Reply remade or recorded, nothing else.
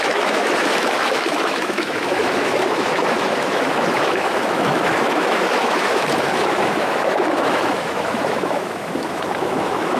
remade